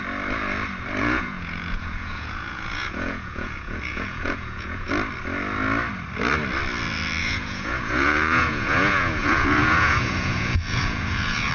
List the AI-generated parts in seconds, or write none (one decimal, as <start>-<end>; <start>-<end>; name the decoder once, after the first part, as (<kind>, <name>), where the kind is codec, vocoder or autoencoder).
1.0-4.9 (vocoder, Vocos); 7.2-11.5